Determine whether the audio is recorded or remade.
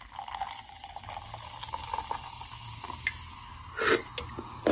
recorded